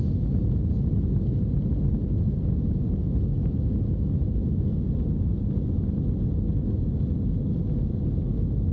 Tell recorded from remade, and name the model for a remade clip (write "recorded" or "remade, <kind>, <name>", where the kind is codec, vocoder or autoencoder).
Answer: recorded